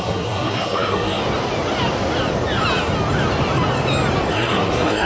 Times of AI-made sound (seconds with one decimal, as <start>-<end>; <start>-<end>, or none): 0.0-1.2; 4.3-5.1